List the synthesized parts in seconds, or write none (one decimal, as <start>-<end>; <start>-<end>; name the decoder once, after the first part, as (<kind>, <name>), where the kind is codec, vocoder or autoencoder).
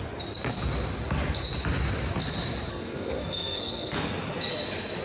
2.7-4.1 (codec, SNAC)